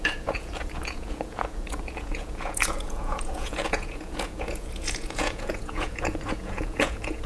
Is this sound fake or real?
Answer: fake